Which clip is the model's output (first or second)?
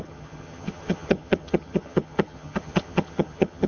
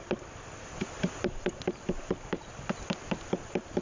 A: first